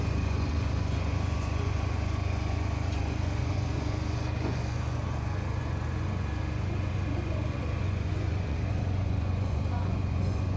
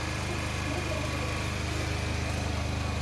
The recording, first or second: second